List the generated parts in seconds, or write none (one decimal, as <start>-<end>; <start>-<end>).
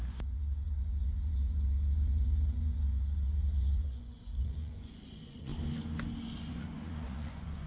0.0-5.5; 6.4-7.7